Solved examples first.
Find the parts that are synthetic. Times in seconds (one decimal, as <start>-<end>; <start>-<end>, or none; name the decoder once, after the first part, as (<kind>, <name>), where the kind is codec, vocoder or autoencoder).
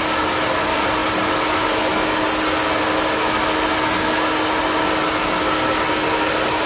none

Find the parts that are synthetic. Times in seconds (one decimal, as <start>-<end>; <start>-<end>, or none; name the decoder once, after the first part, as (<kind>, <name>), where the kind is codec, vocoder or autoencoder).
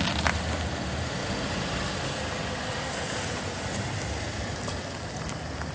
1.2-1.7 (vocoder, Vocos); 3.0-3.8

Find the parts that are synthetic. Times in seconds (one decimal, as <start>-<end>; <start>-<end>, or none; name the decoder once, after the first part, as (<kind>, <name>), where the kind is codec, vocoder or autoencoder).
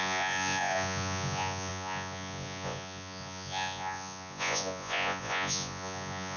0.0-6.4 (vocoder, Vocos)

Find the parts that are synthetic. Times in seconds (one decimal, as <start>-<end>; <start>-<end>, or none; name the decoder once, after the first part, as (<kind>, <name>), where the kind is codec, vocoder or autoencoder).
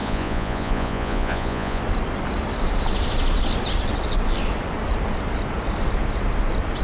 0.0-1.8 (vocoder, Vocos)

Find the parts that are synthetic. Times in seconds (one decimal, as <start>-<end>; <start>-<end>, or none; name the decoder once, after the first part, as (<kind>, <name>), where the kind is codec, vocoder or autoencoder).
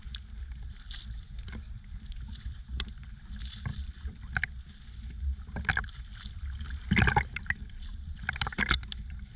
none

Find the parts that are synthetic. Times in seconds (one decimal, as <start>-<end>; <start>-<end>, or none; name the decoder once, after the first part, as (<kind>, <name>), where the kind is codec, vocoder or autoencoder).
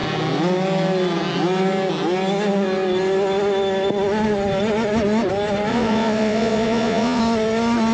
5.7-7.2 (vocoder, Vocos)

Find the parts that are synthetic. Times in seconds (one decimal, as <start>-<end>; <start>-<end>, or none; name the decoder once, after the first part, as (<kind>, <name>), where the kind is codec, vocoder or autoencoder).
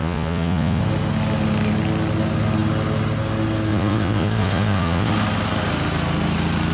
0.0-0.8 (vocoder, Vocos); 3.7-5.1